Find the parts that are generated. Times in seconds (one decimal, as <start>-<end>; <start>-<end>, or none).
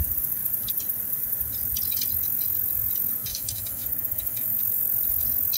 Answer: 3.3-4.6